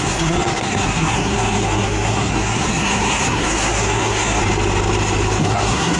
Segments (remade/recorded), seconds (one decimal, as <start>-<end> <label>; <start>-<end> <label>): 0.0-4.4 remade; 4.4-5.4 recorded; 5.4-6.0 remade